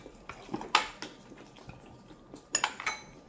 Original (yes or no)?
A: yes